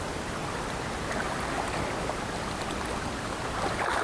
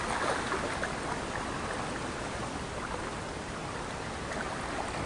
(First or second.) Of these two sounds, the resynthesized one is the second